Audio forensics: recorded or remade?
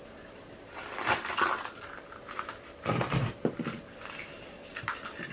recorded